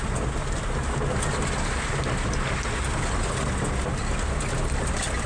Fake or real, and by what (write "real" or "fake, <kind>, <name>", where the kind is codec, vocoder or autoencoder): real